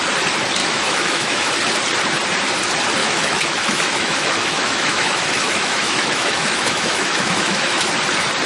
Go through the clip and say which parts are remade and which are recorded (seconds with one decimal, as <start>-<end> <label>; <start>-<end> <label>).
0.0-0.6 recorded; 0.6-1.5 remade; 1.5-3.0 recorded; 3.0-7.9 remade; 7.9-8.5 recorded